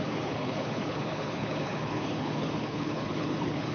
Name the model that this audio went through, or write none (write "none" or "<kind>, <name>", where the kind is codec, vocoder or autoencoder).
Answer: codec, HILCodec